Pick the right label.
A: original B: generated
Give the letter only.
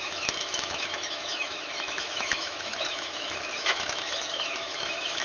B